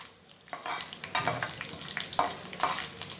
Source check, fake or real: real